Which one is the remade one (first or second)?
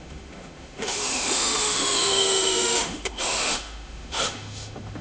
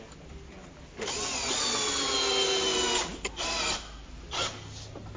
first